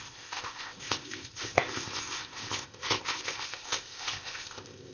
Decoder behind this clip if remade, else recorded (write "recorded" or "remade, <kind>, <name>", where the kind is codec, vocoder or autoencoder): remade, codec, ZipCodec